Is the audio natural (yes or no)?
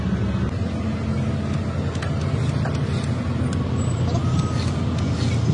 yes